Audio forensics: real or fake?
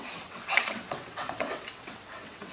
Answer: fake